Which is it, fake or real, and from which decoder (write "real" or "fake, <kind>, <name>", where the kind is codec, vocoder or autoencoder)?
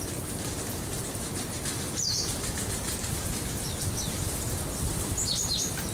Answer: fake, vocoder, BigVGAN v2